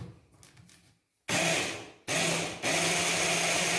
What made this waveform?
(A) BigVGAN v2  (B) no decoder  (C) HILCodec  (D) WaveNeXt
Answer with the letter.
B